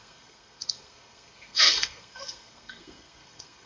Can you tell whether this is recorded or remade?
remade